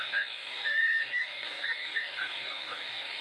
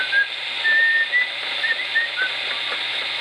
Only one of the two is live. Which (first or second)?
second